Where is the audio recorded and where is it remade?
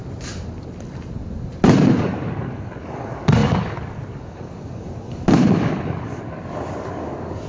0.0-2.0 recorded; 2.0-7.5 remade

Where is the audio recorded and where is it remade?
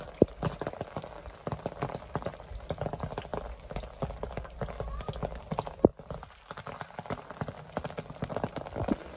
0.0-9.2 recorded